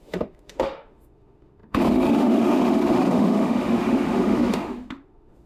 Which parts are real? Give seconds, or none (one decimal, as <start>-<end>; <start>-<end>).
none